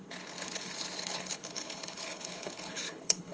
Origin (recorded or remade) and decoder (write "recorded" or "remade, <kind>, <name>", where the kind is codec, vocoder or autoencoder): remade, codec, HILCodec